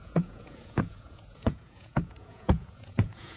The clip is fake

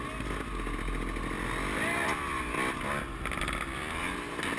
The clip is real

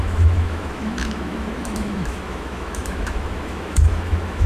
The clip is fake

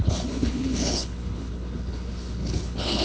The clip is fake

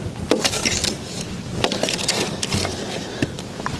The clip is real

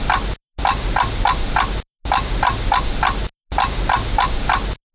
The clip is real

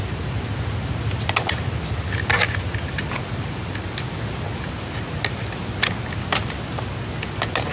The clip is real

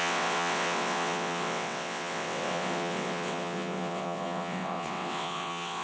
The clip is fake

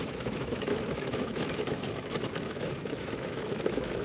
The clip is fake